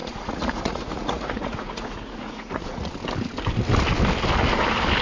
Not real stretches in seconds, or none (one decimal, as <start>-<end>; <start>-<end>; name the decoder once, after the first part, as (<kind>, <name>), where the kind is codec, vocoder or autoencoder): 0.0-2.9 (vocoder, Vocos)